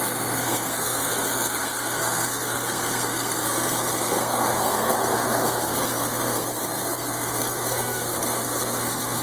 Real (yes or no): no